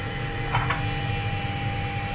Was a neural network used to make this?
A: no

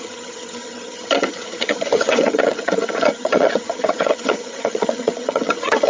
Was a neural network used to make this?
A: yes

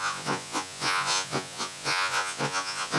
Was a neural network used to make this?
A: yes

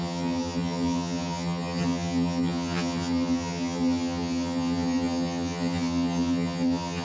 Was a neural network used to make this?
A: yes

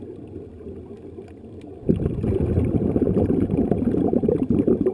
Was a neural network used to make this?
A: no